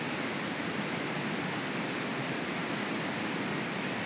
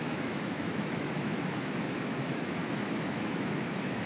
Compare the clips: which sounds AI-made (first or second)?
second